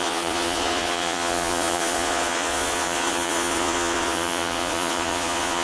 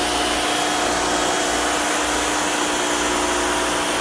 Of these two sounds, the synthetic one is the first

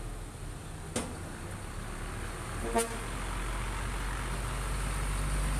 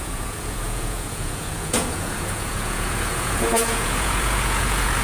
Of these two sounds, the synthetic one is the second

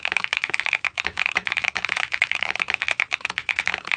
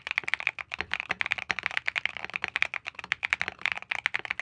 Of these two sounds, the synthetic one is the first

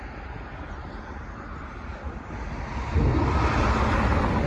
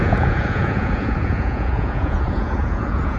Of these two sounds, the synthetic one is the second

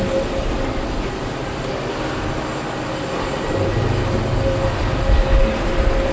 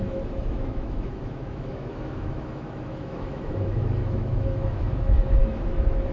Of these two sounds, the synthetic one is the second